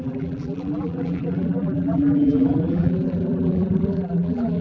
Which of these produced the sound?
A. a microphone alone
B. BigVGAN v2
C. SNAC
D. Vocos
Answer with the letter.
B